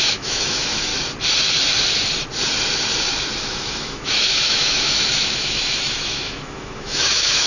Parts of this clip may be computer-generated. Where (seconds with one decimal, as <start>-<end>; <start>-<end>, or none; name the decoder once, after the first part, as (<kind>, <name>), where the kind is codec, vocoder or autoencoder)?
0.0-0.9 (autoencoder, DAC-VAE); 3.4-7.5